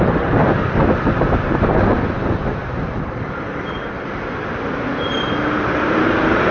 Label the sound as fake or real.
real